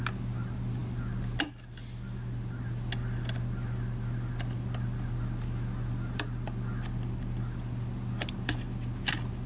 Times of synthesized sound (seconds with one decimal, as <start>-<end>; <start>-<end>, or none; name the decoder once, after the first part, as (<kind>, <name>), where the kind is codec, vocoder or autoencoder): none

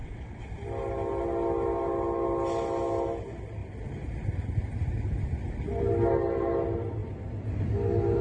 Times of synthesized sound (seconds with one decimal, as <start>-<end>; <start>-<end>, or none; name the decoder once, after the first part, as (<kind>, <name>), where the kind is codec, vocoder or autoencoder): 0.0-0.5 (vocoder, WaveNeXt)

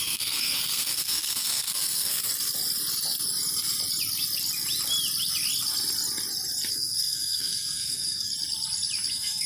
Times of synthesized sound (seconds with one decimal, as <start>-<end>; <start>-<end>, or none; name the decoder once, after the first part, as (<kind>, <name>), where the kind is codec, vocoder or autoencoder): 0.0-2.3 (codec, SNAC); 6.7-8.3; 9.1-9.5

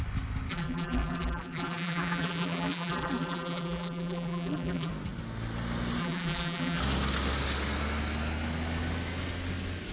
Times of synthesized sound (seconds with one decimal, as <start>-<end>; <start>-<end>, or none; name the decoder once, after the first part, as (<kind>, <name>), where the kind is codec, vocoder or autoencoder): 0.5-4.9 (vocoder, BigVGAN v2); 6.0-6.8

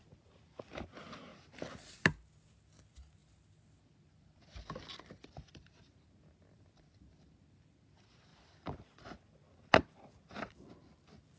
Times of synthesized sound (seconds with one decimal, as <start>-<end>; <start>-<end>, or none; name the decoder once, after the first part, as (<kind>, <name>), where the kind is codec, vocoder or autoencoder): 8.3-10.7 (vocoder, BigVGAN v2)

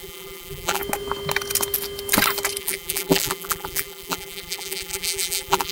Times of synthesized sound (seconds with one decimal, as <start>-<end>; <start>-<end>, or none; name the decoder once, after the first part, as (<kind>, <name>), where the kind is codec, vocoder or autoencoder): 0.0-0.8 (vocoder, BigVGAN v2); 2.6-5.7